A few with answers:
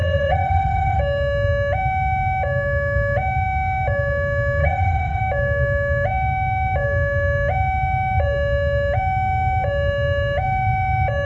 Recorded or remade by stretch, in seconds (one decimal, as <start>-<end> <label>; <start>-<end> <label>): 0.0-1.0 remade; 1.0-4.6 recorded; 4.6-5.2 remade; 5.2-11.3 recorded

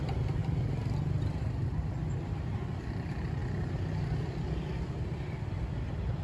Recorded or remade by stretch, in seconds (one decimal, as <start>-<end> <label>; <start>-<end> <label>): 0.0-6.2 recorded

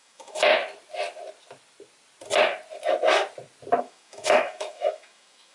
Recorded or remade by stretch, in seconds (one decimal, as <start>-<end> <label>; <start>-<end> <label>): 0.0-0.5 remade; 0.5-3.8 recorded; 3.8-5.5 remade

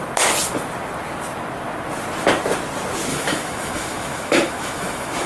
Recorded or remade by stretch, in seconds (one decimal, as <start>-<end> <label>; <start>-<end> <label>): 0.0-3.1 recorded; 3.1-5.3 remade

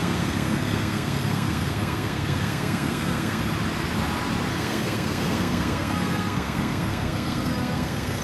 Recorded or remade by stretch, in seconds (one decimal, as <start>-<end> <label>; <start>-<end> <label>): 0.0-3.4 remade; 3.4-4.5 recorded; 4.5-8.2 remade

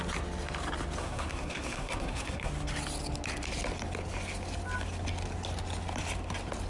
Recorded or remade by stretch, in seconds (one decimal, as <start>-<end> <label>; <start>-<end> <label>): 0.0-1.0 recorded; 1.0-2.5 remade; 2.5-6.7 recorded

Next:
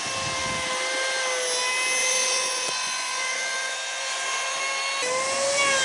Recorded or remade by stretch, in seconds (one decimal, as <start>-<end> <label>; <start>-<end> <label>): 0.0-2.0 recorded; 2.0-4.6 remade; 4.6-5.8 recorded

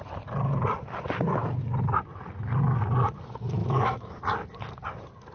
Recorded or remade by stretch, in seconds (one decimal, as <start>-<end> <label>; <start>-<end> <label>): 0.0-3.6 recorded; 3.6-4.2 remade; 4.2-5.3 recorded